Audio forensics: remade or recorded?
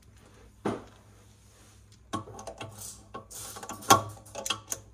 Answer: recorded